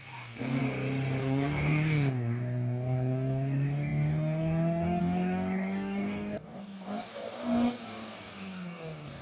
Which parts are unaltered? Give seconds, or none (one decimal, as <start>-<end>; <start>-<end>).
0.6-1.2